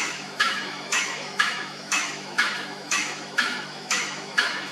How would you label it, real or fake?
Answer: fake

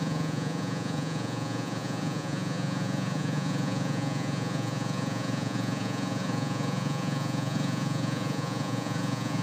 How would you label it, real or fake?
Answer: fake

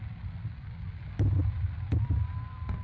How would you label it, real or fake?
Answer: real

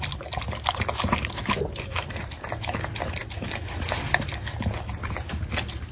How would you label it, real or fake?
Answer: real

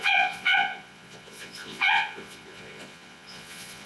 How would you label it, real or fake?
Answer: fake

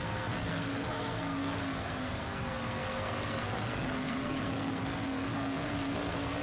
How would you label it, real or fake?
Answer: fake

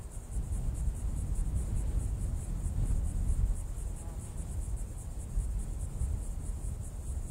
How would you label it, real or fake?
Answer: real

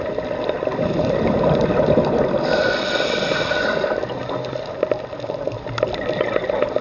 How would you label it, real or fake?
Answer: real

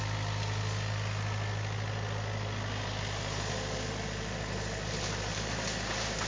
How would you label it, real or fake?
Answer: real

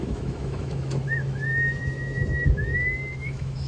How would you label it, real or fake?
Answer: fake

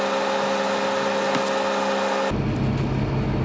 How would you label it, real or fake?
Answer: real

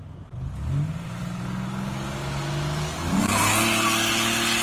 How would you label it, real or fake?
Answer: real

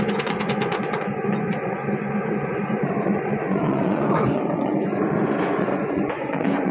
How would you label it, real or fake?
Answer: fake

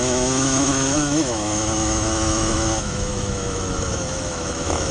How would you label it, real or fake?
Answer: fake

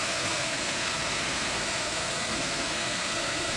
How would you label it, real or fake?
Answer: fake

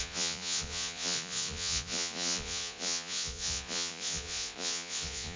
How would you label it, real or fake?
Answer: fake